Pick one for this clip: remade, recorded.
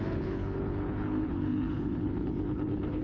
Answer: remade